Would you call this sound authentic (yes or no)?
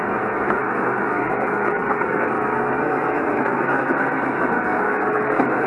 no